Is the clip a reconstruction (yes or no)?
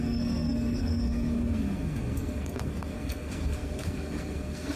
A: yes